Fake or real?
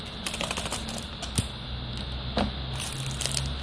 real